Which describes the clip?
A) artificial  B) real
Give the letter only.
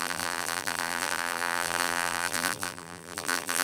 A